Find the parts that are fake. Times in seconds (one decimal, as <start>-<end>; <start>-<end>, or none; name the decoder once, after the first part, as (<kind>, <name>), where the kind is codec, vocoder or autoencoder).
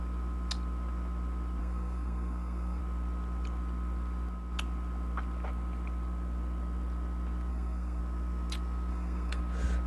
1.6-2.8 (codec, SNAC); 7.5-8.0; 8.9-9.4